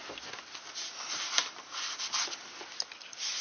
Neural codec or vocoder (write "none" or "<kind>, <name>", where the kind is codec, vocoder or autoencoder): none